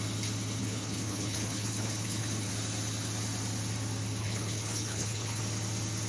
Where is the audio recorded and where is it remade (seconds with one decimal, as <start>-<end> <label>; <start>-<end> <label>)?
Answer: 0.0-0.6 recorded; 0.6-2.5 remade; 2.5-4.2 recorded; 4.2-5.4 remade; 5.4-6.1 recorded